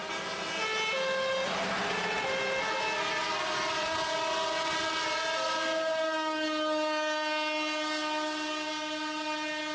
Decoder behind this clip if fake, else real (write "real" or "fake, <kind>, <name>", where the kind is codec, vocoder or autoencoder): real